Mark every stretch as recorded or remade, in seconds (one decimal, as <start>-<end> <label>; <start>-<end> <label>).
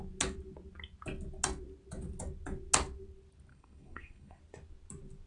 0.0-3.5 recorded; 3.5-4.4 remade; 4.4-5.3 recorded